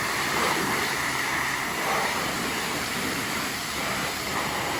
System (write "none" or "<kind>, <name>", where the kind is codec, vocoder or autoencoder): vocoder, BigVGAN v2